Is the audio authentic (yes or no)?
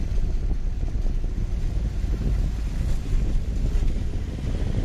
yes